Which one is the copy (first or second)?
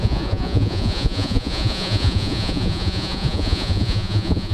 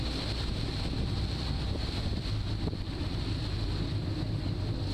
first